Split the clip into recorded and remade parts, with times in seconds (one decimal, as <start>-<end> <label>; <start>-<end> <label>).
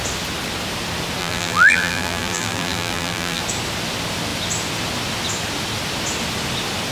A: 0.0-1.2 recorded; 1.2-3.4 remade; 3.4-6.9 recorded